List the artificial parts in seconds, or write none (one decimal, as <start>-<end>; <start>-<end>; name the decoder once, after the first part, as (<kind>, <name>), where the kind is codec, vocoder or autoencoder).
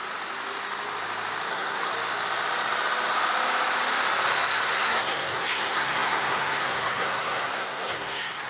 1.5-1.9 (codec, SNAC); 4.4-8.5